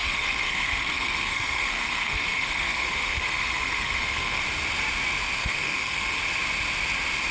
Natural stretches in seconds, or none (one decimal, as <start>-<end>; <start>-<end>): 4.4-5.4; 6.2-7.3